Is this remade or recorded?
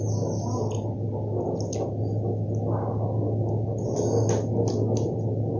recorded